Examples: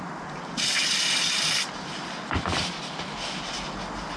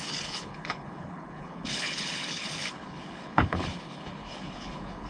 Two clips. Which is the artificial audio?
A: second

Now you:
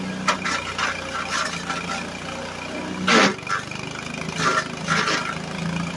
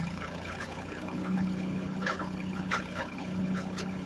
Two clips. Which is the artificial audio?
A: second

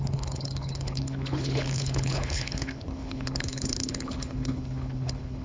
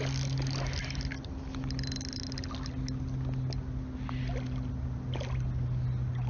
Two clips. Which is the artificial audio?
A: first